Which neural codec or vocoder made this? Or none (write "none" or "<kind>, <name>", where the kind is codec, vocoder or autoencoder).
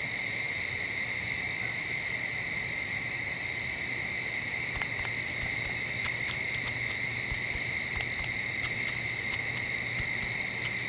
none